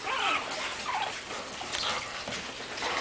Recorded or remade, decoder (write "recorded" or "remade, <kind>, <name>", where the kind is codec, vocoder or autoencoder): recorded